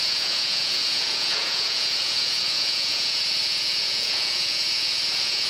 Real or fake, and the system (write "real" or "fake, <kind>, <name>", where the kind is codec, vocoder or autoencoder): fake, vocoder, Vocos